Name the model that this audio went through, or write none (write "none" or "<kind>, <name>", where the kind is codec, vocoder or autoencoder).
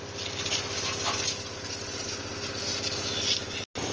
none